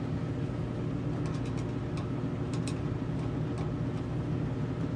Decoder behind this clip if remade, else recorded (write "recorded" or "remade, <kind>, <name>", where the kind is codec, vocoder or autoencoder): recorded